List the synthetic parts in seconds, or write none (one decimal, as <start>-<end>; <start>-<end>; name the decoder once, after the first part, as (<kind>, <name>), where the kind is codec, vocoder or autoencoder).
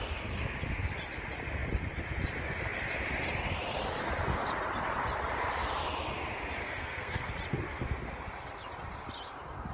6.6-7.3 (codec, SNAC)